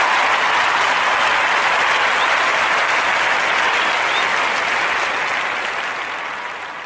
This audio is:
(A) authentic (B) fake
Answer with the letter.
A